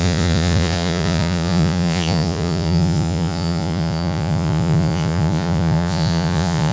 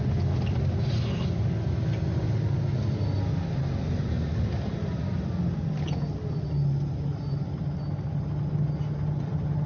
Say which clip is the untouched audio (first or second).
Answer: second